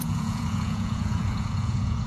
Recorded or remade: remade